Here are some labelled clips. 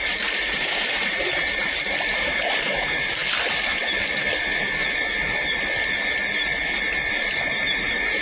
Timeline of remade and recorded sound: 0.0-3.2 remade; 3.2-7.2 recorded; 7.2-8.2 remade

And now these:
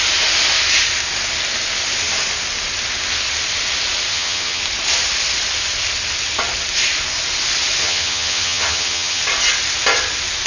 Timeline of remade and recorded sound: 0.0-4.1 recorded; 4.1-4.6 remade; 4.6-7.8 recorded; 7.8-9.2 remade; 9.2-10.5 recorded